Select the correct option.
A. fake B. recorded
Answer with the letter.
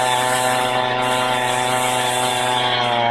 B